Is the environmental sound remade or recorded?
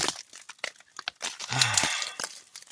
recorded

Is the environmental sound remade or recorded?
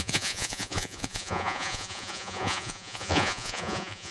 remade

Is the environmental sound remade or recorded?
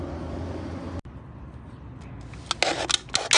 recorded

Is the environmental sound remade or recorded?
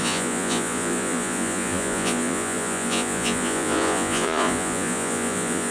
remade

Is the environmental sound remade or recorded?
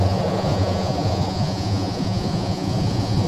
remade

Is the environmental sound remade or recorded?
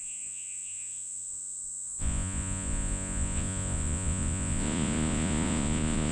remade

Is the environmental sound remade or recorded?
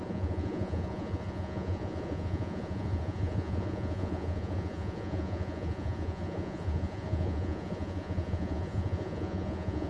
remade